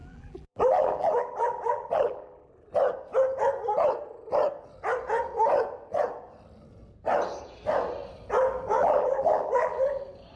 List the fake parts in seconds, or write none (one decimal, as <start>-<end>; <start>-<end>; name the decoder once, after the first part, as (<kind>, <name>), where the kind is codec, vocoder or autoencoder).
0.0-2.5 (vocoder, BigVGAN v2); 8.8-10.0